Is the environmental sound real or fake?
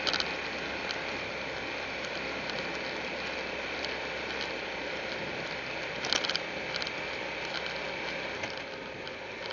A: real